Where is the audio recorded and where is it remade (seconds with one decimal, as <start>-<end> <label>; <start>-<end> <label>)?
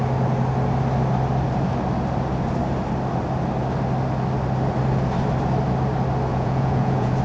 0.0-6.3 recorded; 6.3-7.2 remade